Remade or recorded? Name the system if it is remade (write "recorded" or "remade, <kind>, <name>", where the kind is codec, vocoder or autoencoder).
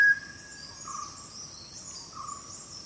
recorded